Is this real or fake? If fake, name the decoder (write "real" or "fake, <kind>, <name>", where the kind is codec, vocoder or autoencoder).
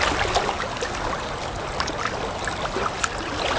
real